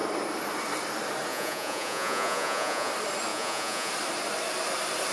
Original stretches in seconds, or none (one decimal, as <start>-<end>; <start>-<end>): 0.0-1.3; 2.9-3.3; 3.9-5.1